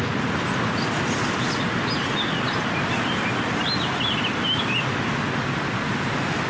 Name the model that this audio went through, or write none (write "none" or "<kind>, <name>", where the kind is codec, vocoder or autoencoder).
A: none